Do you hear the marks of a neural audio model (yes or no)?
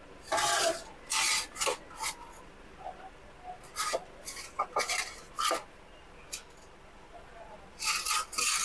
no